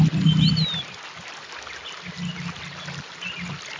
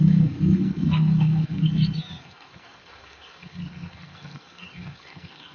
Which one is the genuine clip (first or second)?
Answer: first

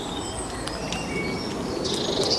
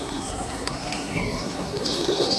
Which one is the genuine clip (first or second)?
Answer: first